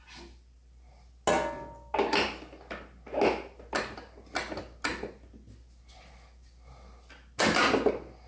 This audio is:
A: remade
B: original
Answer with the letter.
B